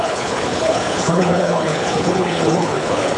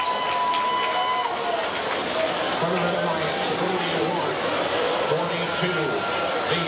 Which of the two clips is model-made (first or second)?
first